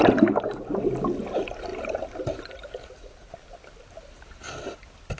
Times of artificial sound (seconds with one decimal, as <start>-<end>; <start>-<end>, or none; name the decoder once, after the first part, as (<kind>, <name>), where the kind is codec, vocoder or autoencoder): 2.8-3.3 (vocoder, Vocos)